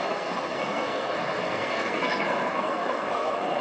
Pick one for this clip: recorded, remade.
remade